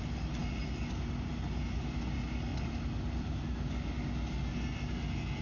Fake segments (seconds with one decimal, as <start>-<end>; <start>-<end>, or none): 2.5-3.3

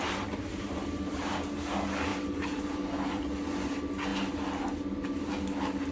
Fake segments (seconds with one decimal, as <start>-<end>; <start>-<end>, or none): 0.5-1.5; 2.1-3.2

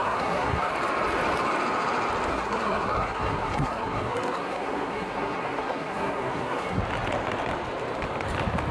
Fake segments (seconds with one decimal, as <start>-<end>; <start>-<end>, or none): 0.0-0.7; 2.3-6.8

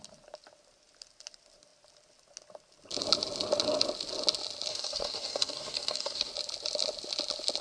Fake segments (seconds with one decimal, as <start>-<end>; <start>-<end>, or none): 4.7-6.3

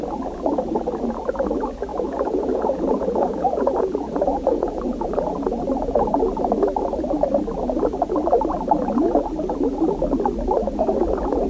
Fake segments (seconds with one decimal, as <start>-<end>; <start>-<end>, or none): 1.9-5.1